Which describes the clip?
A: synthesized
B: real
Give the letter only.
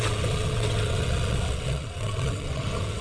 A